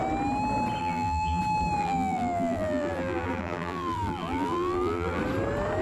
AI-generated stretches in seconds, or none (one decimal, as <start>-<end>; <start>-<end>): 0.8-1.4; 1.8-5.2